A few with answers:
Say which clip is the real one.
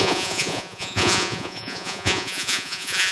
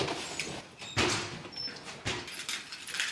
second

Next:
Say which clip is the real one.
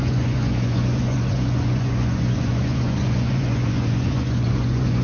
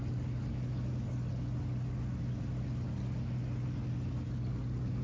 second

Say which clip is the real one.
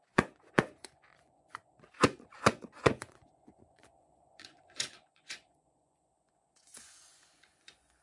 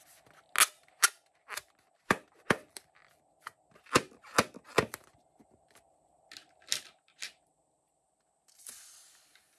second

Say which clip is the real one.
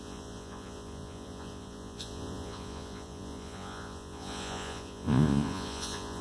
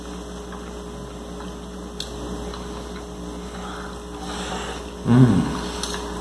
second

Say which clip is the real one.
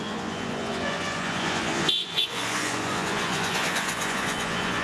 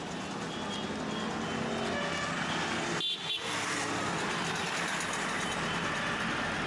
second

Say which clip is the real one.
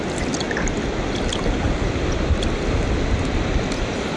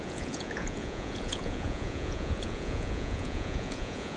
first